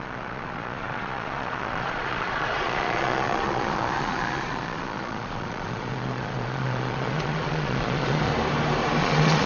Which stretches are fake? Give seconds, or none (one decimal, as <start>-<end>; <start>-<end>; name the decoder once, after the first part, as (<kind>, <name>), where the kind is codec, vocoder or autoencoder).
0.0-8.3 (vocoder, Vocos); 9.0-9.5